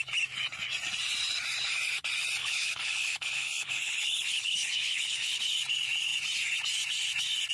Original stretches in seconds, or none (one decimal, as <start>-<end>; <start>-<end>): 0.0-2.4; 5.4-7.5